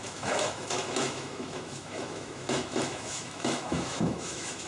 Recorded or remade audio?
remade